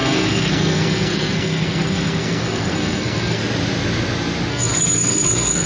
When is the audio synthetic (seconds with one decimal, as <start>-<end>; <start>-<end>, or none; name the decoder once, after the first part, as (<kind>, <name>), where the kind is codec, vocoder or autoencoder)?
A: 0.0-3.4 (codec, SNAC); 4.5-5.7